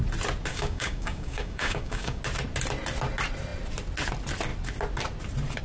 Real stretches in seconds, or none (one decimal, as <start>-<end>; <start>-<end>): 0.0-0.5; 2.2-5.6